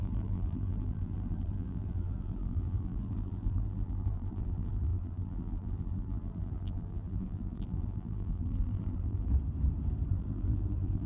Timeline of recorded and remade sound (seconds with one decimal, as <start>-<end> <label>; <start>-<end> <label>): 0.0-9.3 remade; 9.3-10.1 recorded; 10.1-11.1 remade